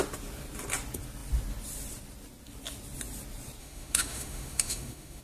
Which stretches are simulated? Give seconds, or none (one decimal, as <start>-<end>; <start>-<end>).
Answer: 3.6-5.2